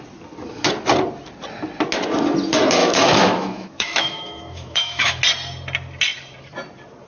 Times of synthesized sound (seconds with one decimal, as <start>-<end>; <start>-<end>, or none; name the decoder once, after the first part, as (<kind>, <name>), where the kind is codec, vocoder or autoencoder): 2.8-5.2 (autoencoder, DAC-VAE)